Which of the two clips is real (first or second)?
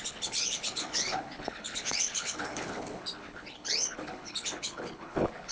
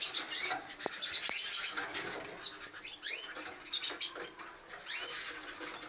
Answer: second